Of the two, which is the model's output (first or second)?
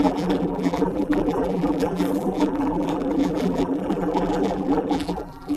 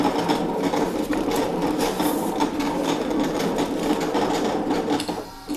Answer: first